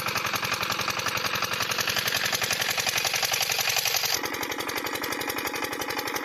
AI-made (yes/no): no